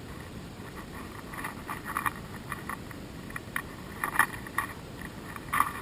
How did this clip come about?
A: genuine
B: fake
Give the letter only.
B